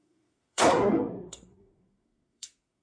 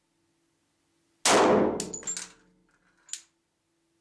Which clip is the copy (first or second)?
first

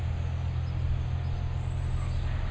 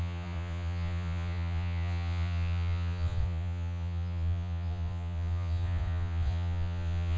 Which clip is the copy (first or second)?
second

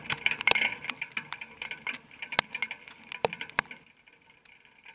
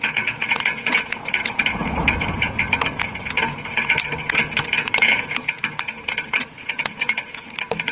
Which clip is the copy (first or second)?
second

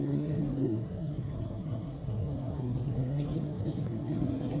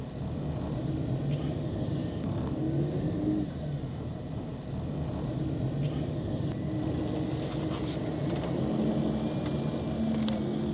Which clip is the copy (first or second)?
first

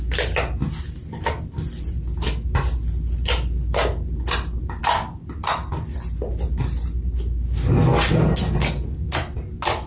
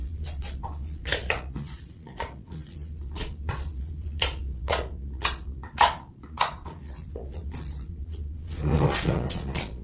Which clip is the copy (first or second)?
second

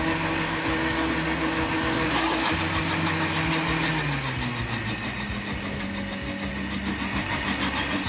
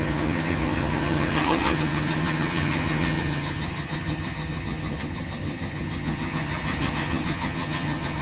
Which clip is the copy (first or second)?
second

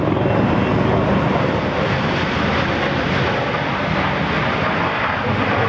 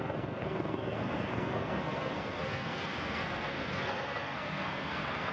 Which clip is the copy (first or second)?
second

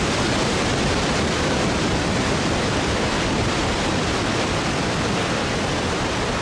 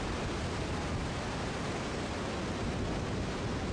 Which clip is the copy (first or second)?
first